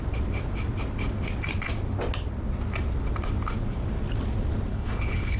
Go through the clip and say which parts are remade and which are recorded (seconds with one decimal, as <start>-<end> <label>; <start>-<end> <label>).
0.0-4.7 recorded; 4.7-5.4 remade